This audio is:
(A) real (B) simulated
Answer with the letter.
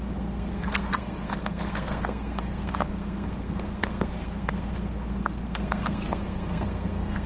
B